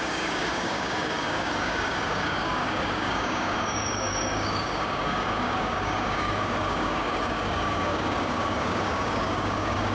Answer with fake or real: fake